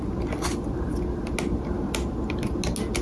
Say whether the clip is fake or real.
real